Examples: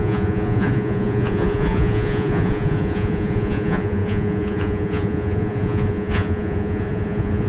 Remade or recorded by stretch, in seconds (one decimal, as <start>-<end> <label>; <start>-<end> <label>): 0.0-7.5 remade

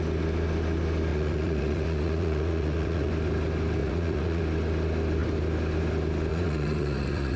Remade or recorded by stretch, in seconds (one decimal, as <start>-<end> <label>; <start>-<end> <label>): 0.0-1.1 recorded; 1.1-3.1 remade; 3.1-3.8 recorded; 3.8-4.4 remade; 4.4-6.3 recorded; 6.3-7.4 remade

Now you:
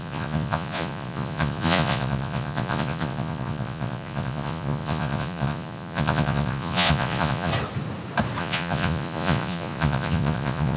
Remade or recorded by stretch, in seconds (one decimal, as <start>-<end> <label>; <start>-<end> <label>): 0.0-7.5 remade; 7.5-8.4 recorded; 8.4-10.8 remade

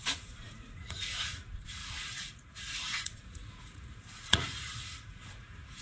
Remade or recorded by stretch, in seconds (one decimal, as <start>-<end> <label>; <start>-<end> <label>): 0.0-5.8 remade

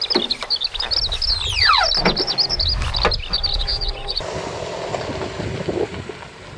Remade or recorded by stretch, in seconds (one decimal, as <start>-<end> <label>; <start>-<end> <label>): 0.0-3.5 recorded; 3.5-4.2 remade; 4.2-6.6 recorded

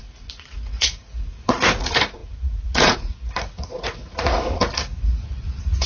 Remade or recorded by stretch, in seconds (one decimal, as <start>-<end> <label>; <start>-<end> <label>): 0.0-5.9 remade